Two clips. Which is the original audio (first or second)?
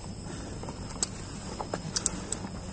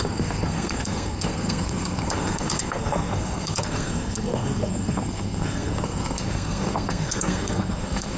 first